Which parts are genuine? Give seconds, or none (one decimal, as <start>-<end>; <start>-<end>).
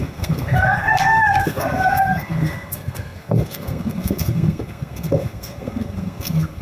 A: none